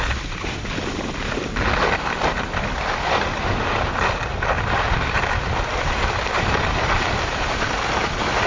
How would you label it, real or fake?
fake